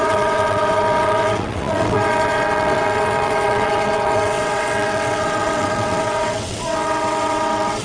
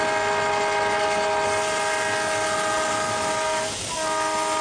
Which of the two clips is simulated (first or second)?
first